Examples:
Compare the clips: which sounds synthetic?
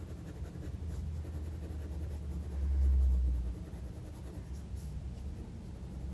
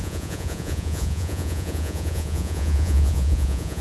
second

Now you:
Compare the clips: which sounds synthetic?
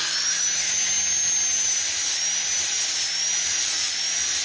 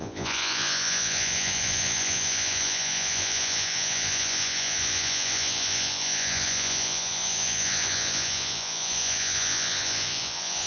second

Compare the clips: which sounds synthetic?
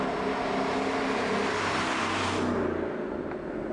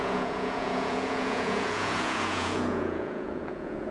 second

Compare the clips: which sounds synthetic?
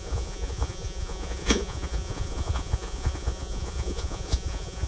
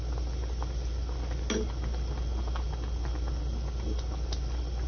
first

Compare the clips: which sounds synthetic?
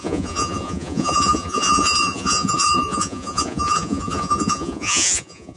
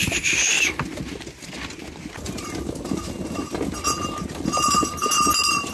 first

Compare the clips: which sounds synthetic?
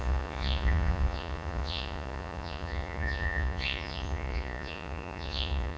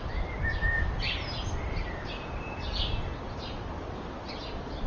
first